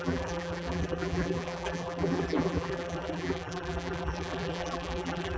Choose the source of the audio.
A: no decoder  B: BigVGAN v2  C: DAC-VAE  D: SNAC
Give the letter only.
B